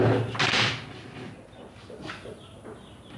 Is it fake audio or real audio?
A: real